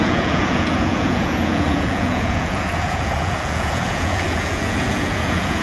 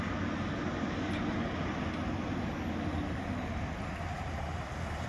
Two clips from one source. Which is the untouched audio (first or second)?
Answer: second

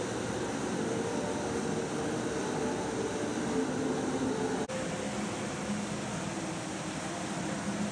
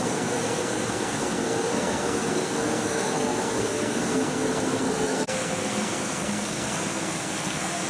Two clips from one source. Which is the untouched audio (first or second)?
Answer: first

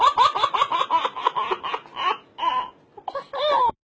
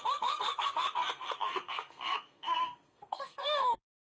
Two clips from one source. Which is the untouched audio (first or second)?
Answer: first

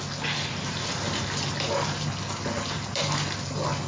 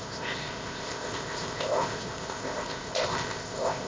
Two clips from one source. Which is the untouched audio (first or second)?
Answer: first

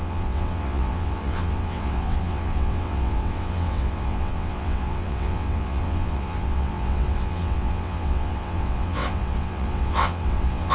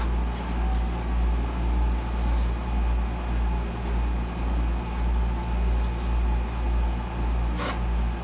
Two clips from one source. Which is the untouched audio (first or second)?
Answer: second